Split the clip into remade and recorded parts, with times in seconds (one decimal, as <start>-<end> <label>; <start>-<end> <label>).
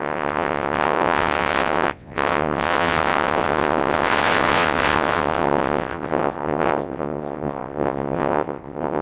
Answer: 0.0-9.0 remade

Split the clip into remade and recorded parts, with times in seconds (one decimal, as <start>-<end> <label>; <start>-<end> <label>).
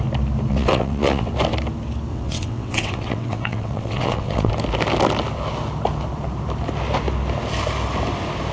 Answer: 0.0-0.5 recorded; 0.5-1.3 remade; 1.3-2.1 recorded; 2.1-4.5 remade; 4.5-8.5 recorded